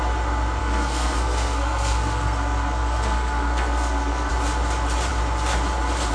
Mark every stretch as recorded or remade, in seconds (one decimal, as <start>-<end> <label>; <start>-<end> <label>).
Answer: 0.0-0.6 recorded; 0.6-4.3 remade; 4.3-6.1 recorded